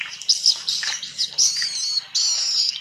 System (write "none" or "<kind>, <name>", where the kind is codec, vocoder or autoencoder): none